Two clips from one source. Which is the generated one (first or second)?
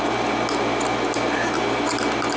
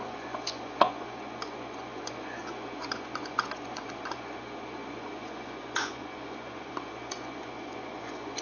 second